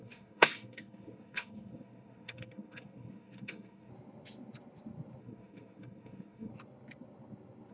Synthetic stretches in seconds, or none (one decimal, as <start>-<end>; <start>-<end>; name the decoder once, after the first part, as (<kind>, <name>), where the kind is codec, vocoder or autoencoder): 0.0-3.9 (codec, SNAC); 5.2-6.5